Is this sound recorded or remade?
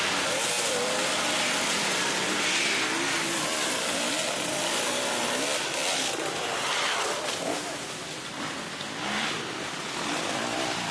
recorded